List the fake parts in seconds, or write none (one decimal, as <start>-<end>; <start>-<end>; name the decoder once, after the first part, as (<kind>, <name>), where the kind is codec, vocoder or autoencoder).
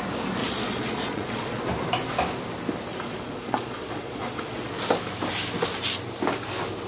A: 0.4-1.6 (vocoder, Vocos); 2.9-4.7